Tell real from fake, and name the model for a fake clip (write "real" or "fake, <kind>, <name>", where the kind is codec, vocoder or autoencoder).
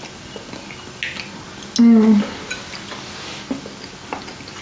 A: real